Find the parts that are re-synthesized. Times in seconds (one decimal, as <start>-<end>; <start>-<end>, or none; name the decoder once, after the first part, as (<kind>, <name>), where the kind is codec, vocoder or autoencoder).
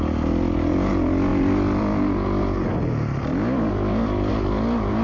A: none